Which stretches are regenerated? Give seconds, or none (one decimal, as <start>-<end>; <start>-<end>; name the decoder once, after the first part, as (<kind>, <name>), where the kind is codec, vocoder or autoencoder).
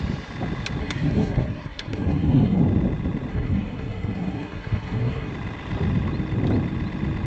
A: 0.8-2.6 (codec, SNAC); 3.3-5.3